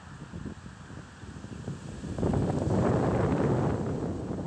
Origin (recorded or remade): recorded